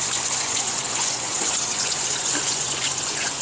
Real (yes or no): no